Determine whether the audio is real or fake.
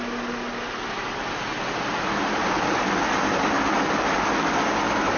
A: real